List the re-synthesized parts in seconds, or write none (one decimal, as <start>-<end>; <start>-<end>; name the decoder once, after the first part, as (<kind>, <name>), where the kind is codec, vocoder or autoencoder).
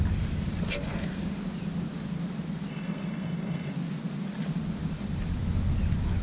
2.7-3.7 (codec, SNAC)